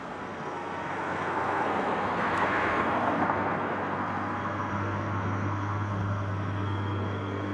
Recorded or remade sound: remade